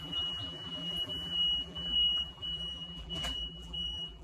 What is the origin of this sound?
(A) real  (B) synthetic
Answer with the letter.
B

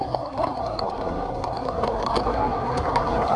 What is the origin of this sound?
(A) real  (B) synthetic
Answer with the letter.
B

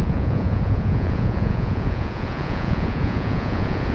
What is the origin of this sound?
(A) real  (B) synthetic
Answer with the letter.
B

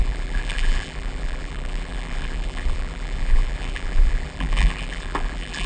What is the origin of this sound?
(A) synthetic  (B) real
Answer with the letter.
A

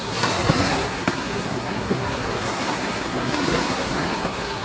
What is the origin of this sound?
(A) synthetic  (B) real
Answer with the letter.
A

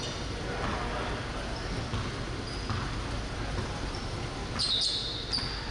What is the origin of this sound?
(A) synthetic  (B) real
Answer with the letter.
B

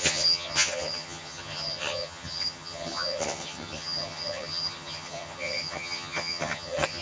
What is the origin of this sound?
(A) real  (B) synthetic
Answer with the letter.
B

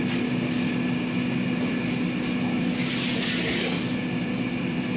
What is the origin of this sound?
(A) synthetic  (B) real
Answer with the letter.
B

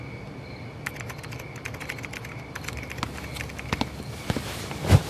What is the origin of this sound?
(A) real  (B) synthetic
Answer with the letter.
A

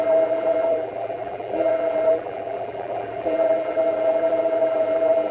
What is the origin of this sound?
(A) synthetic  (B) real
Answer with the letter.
A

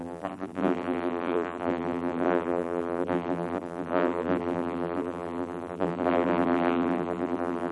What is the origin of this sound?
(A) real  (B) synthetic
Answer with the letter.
B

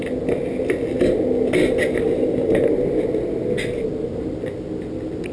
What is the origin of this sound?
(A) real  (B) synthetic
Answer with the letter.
A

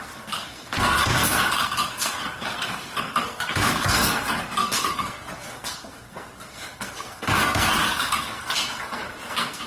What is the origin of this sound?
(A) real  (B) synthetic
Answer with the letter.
B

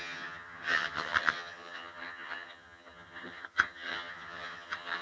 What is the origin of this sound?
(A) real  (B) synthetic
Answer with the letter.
B